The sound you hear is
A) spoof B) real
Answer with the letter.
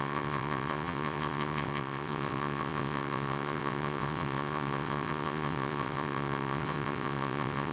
A